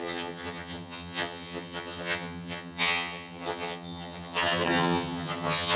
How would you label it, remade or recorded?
remade